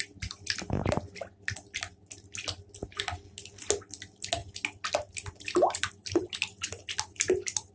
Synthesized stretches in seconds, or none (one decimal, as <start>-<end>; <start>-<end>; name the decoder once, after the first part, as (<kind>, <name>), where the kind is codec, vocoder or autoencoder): none